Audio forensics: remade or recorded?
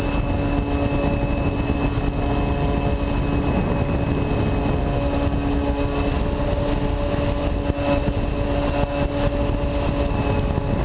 recorded